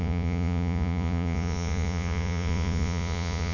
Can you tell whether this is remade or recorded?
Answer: remade